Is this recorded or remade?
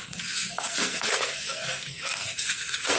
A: remade